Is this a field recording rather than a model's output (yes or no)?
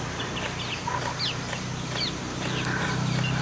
yes